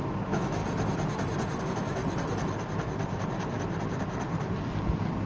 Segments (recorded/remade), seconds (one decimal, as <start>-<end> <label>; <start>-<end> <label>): 0.0-0.6 remade; 0.6-1.6 recorded; 1.6-2.0 remade; 2.0-5.3 recorded